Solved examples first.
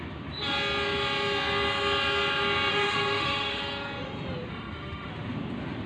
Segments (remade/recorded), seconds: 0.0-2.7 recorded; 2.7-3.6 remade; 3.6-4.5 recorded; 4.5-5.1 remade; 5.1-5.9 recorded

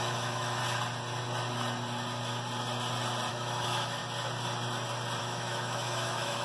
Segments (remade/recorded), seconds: 0.0-0.6 remade; 0.6-3.3 recorded; 3.3-4.0 remade; 4.0-5.2 recorded; 5.2-6.4 remade

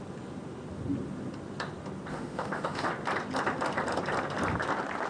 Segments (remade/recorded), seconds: 0.0-2.1 recorded; 2.1-2.9 remade; 2.9-5.1 recorded

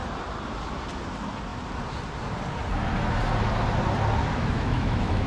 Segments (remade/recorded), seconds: 0.0-4.4 recorded; 4.4-5.3 remade